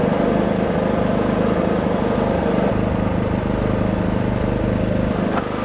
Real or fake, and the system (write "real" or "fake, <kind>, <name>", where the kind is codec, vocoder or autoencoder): real